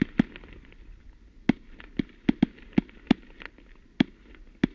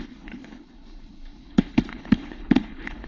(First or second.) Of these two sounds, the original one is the first